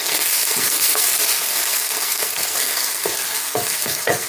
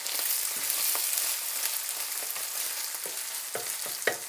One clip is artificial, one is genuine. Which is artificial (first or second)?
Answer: first